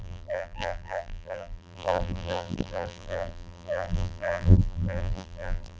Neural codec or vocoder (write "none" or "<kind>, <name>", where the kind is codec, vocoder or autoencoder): vocoder, BigVGAN v2